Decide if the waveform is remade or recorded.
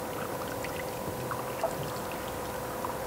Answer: recorded